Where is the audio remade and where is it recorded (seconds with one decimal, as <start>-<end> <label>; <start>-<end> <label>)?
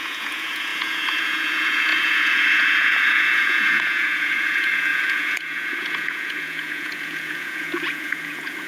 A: 0.0-8.7 remade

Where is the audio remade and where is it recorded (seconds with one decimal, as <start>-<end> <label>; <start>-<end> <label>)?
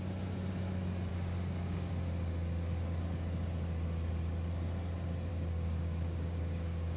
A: 0.0-1.1 recorded; 1.1-1.9 remade; 1.9-5.3 recorded; 5.3-7.0 remade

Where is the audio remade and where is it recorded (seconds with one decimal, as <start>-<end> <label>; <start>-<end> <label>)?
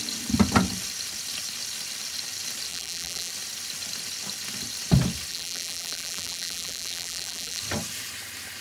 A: 0.0-2.7 recorded; 2.7-3.3 remade; 3.3-5.3 recorded; 5.3-7.6 remade; 7.6-8.6 recorded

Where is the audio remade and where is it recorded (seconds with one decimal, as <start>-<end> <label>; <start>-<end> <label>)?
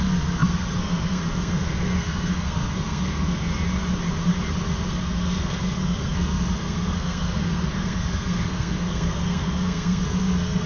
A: 0.0-3.5 remade; 3.5-4.9 recorded; 4.9-10.7 remade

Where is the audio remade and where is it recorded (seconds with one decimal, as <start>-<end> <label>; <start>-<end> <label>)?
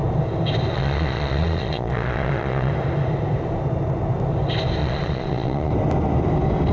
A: 0.0-0.7 recorded; 0.7-2.7 remade; 2.7-4.8 recorded; 4.8-5.7 remade; 5.7-6.7 recorded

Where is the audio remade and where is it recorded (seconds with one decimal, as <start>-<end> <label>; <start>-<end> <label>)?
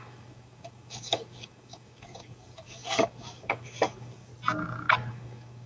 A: 0.0-4.3 remade; 4.3-5.1 recorded; 5.1-5.7 remade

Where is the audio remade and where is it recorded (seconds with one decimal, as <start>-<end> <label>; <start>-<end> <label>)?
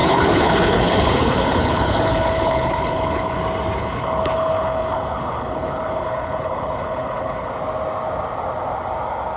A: 0.0-3.4 remade; 3.4-3.8 recorded; 3.8-7.5 remade; 7.5-9.4 recorded